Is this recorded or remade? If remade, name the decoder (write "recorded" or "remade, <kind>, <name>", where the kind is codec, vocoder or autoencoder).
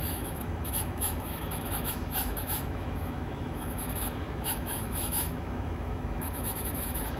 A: remade, autoencoder, DAC-VAE